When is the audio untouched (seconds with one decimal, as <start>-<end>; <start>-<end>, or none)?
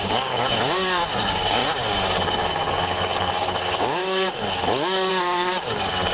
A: none